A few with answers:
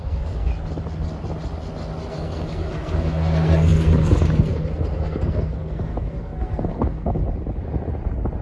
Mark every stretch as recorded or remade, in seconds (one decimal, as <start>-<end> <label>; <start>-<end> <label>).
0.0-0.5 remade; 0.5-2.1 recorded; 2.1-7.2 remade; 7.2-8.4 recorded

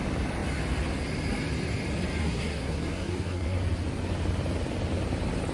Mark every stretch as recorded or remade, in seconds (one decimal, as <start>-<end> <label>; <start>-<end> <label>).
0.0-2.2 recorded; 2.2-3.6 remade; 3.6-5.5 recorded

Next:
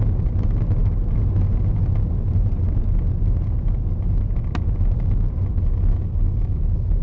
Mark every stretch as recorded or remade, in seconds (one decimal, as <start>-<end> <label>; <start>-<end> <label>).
0.0-7.0 recorded